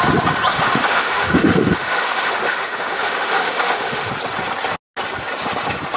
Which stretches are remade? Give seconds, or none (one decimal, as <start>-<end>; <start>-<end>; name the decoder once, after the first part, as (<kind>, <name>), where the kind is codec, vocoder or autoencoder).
0.5-4.1 (autoencoder, DAC-VAE)